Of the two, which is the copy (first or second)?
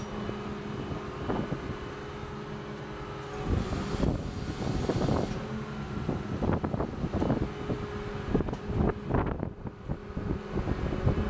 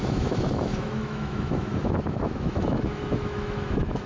second